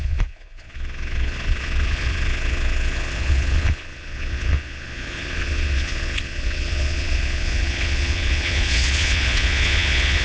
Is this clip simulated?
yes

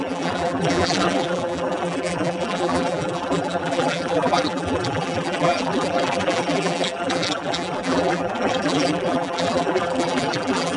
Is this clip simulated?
yes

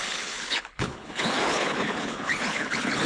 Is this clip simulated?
yes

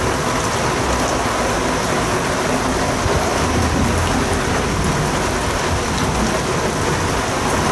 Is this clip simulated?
no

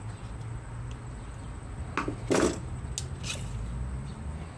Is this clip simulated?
no